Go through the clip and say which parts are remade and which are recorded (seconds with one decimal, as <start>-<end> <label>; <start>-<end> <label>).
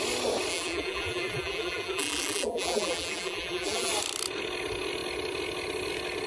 0.0-0.5 recorded; 0.5-3.9 remade; 3.9-6.3 recorded